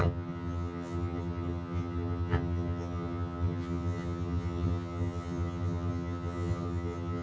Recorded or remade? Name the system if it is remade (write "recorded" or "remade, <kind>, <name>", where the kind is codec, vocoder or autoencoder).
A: remade, vocoder, HiFi-GAN